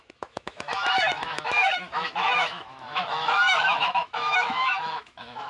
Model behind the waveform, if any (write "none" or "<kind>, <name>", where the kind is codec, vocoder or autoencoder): autoencoder, DAC-VAE